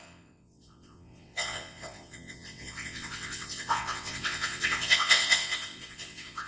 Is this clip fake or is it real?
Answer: fake